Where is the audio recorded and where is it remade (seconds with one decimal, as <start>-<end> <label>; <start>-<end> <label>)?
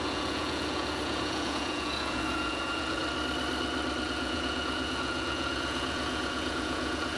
0.0-3.0 remade; 3.0-4.0 recorded; 4.0-7.2 remade